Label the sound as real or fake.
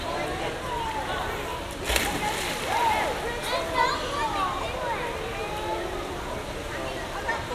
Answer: real